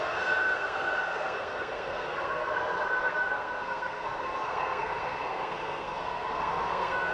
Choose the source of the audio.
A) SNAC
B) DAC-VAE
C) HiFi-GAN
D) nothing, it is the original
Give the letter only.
A